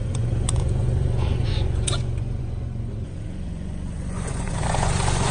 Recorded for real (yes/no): no